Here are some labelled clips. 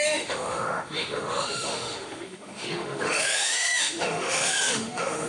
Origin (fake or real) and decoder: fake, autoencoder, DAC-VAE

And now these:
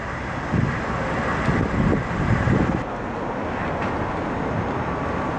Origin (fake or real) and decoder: real